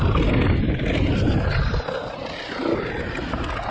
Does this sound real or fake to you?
real